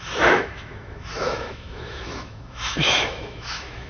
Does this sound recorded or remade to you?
remade